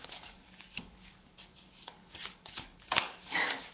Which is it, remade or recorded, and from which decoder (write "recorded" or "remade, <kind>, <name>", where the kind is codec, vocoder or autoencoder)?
remade, codec, DAC